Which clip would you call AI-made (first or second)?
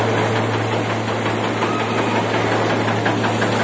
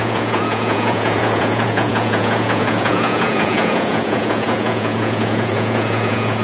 second